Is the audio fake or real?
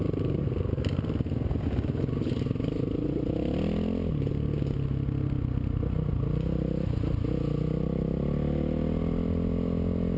real